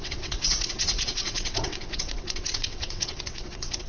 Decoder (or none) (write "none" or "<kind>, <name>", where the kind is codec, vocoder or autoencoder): vocoder, WaveNeXt